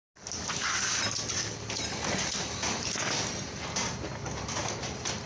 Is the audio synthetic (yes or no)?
no